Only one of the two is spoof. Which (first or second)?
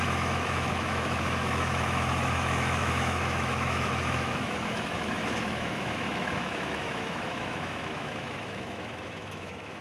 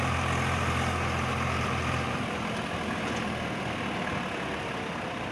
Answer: first